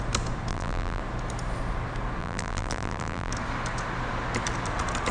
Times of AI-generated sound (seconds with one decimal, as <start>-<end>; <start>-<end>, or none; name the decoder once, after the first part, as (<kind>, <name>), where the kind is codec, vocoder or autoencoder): 0.5-1.0 (vocoder, BigVGAN v2); 2.2-3.3